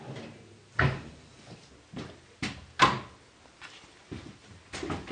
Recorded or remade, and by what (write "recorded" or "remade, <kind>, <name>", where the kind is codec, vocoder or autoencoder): recorded